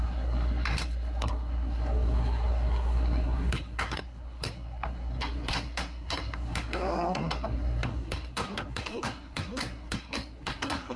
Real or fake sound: fake